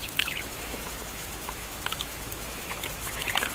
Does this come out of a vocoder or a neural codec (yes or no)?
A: yes